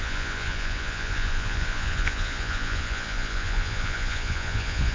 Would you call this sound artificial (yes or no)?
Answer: yes